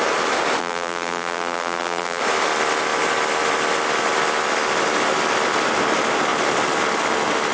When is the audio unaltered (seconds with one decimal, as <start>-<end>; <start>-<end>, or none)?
0.0-0.6; 2.2-7.5